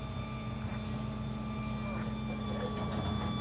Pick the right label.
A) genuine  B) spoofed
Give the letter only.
A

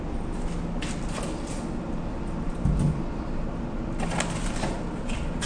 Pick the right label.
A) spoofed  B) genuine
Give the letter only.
B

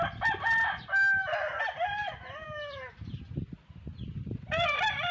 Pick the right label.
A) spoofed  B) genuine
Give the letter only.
B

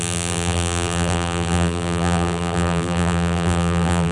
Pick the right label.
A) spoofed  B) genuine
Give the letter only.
A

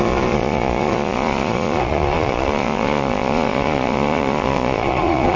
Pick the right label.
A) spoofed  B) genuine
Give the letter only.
A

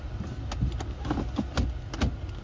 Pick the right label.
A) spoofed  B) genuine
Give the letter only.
B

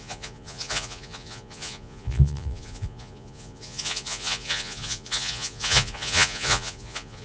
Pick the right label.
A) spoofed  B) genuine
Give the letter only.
A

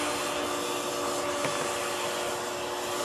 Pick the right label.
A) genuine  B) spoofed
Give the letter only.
A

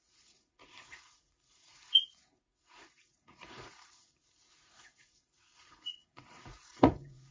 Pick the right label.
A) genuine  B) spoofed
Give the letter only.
B